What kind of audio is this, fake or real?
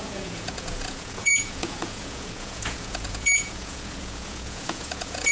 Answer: fake